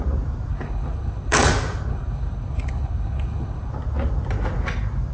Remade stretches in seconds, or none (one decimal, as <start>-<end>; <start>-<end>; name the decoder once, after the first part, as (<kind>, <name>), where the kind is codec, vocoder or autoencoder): 0.5-1.5 (codec, HILCodec); 1.9-3.7